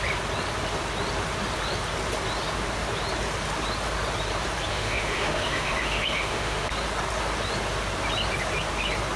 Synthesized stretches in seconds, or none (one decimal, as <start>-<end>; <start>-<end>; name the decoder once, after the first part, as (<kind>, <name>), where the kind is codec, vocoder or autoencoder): 4.7-6.7 (autoencoder, DAC-VAE)